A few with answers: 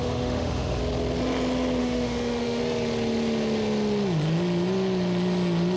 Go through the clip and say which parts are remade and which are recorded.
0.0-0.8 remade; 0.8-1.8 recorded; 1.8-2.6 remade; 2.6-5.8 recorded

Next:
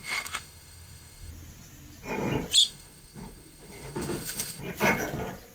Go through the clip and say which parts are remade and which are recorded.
0.0-1.3 remade; 1.3-2.6 recorded; 2.6-4.6 remade; 4.6-5.5 recorded

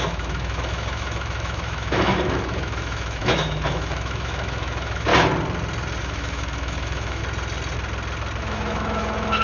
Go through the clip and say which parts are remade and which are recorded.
0.0-5.1 remade; 5.1-6.0 recorded; 6.0-7.2 remade; 7.2-8.4 recorded; 8.4-9.4 remade

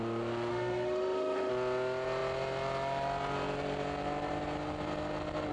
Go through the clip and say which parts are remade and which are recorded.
0.0-0.5 recorded; 0.5-1.5 remade; 1.5-5.5 recorded

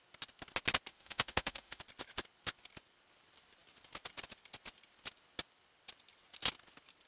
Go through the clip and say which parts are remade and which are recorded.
0.0-0.9 recorded; 0.9-1.8 remade; 1.8-7.1 recorded

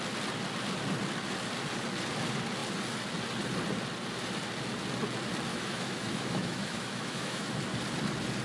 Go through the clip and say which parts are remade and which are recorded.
0.0-5.5 recorded; 5.5-7.6 remade; 7.6-8.4 recorded

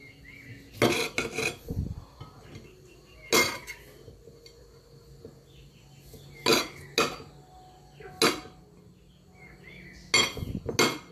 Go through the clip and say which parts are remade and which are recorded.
0.0-11.1 recorded